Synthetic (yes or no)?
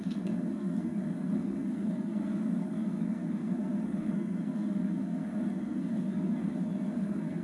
yes